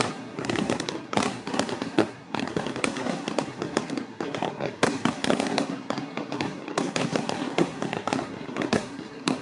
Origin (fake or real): fake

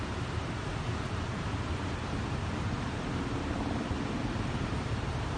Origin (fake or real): fake